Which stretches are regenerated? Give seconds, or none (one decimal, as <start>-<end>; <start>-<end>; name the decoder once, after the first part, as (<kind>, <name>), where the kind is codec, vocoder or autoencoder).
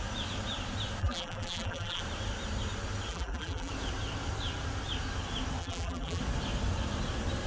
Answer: 1.0-2.0 (vocoder, BigVGAN v2); 3.1-3.7; 5.6-6.2